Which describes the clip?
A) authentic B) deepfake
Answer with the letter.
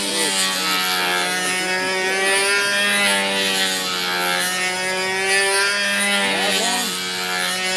A